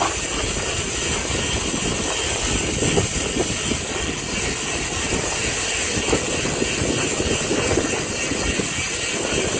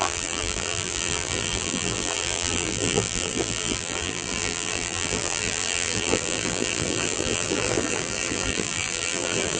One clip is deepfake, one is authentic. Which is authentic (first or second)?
first